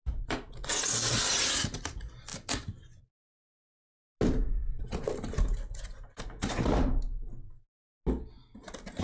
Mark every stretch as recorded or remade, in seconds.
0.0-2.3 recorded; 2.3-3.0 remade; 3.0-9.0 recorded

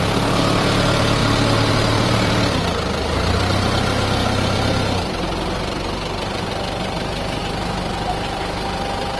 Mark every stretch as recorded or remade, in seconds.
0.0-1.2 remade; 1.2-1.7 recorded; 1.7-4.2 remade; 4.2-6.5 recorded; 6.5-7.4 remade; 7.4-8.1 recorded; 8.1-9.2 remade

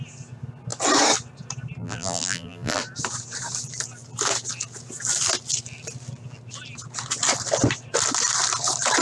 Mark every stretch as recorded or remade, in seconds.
0.0-1.8 recorded; 1.8-2.8 remade; 2.8-9.0 recorded